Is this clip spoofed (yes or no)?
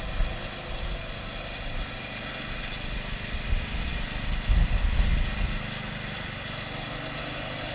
no